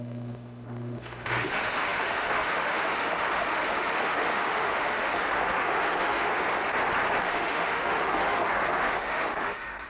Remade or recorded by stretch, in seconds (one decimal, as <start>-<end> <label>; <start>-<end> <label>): 0.0-6.3 remade; 6.3-7.2 recorded; 7.2-9.9 remade